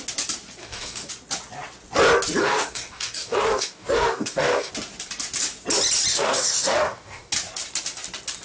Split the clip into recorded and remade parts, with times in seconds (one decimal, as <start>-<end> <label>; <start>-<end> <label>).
0.0-0.6 recorded; 0.6-1.1 remade; 1.1-2.4 recorded; 2.4-4.7 remade; 4.7-6.1 recorded; 6.1-7.3 remade; 7.3-8.4 recorded